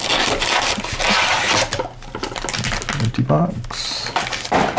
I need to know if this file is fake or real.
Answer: real